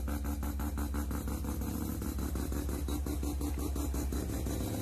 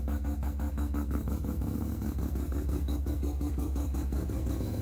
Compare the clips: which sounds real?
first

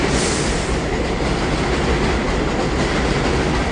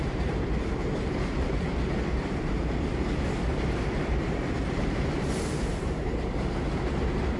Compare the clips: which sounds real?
first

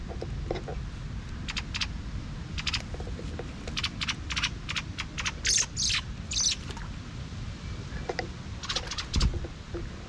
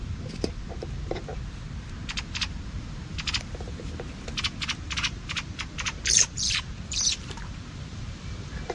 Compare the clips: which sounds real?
first